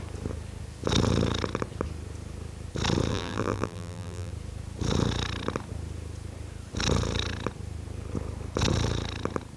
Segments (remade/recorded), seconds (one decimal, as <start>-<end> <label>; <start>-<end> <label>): 0.0-3.1 recorded; 3.1-4.3 remade; 4.3-9.6 recorded